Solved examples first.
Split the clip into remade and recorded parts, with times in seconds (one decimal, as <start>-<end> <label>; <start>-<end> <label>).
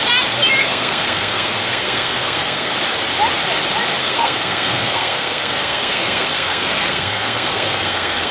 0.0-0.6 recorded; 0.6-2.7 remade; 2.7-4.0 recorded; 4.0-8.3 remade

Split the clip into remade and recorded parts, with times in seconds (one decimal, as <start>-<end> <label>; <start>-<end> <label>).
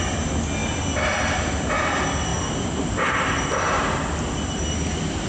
0.0-2.3 recorded; 2.3-5.3 remade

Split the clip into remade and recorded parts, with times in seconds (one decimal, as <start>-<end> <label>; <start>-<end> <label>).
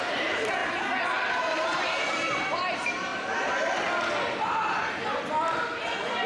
0.0-0.6 remade; 0.6-1.3 recorded; 1.3-3.1 remade; 3.1-4.4 recorded; 4.4-6.3 remade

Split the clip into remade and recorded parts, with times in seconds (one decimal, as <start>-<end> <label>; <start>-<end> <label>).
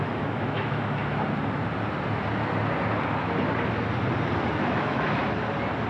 0.0-1.0 remade; 1.0-4.5 recorded; 4.5-5.2 remade; 5.2-5.9 recorded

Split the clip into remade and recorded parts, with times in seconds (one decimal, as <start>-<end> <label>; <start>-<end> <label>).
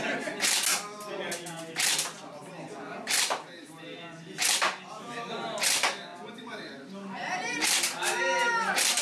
0.0-9.0 recorded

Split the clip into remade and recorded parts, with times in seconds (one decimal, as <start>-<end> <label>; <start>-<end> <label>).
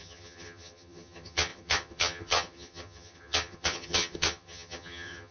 0.0-5.3 remade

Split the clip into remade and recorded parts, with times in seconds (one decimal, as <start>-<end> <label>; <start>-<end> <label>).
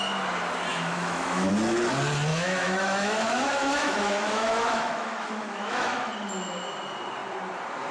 0.0-0.7 recorded; 0.7-1.5 remade; 1.5-2.3 recorded; 2.3-6.1 remade; 6.1-7.9 recorded